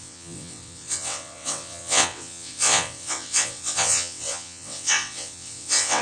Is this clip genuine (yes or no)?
no